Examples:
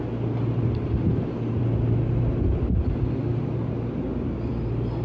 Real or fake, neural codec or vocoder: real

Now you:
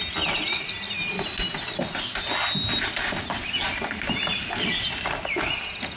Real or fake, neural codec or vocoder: real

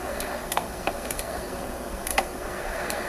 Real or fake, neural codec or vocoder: fake, codec, SNAC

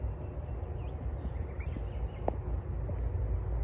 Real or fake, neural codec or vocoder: real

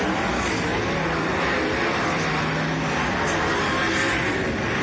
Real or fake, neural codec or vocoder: real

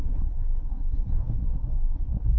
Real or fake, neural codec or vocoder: fake, codec, SNAC